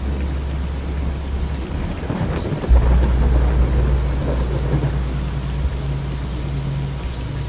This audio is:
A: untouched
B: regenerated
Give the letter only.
A